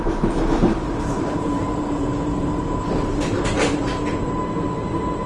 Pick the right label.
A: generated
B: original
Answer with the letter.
A